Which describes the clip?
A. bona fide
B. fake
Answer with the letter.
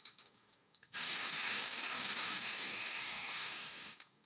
B